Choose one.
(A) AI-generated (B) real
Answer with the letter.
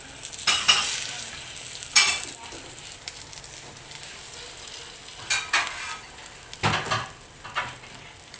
B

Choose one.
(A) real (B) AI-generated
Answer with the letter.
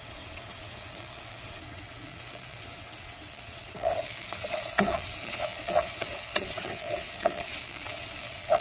B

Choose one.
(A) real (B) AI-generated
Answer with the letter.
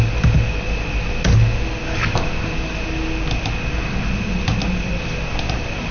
A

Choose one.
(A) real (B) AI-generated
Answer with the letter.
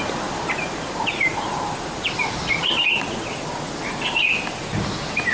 A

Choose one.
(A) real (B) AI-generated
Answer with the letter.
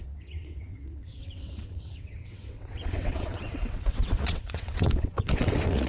B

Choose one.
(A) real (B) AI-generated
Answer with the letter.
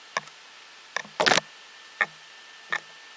A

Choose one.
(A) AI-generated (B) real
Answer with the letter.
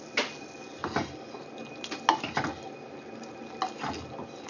B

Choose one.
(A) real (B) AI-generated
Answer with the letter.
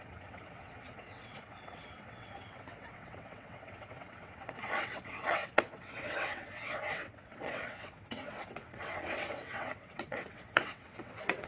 B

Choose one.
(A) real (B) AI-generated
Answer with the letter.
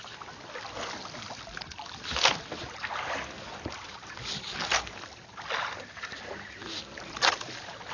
A